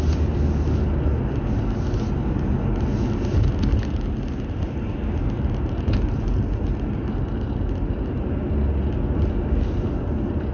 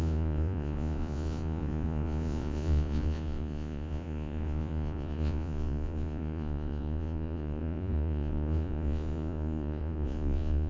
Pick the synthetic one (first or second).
second